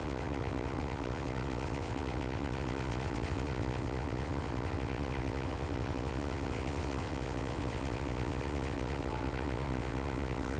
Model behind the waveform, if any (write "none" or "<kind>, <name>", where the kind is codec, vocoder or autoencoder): vocoder, WaveNeXt